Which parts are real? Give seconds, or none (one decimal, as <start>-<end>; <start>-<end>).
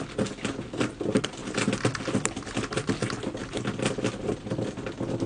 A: 0.0-5.3